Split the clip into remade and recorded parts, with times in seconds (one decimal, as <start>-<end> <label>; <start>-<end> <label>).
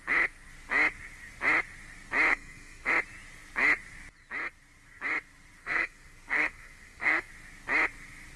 0.0-2.3 recorded; 2.3-2.9 remade; 2.9-5.6 recorded; 5.6-7.3 remade; 7.3-8.4 recorded